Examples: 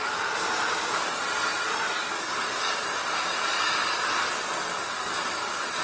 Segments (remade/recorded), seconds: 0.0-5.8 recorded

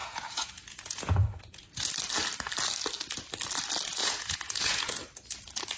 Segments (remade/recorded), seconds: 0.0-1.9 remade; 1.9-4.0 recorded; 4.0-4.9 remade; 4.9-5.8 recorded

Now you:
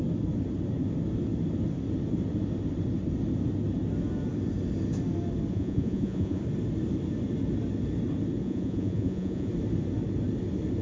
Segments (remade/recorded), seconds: 0.0-5.5 recorded; 5.5-6.4 remade; 6.4-8.4 recorded; 8.4-9.5 remade; 9.5-10.8 recorded

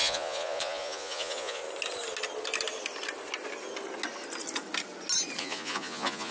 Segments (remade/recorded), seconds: 0.0-1.6 remade; 1.6-5.4 recorded; 5.4-6.3 remade

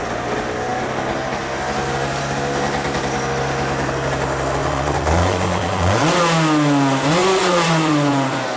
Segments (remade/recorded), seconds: 0.0-4.6 recorded; 4.6-6.2 remade; 6.2-7.2 recorded; 7.2-8.6 remade